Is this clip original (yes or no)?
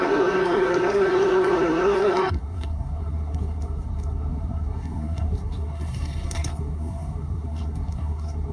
no